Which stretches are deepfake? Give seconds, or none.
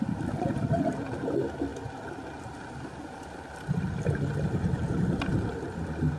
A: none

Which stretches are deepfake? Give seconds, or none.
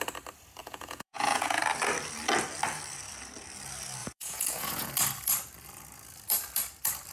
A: 0.6-1.6 (vocoder, Vocos); 4.0-4.9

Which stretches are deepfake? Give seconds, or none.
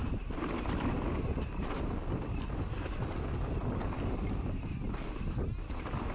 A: none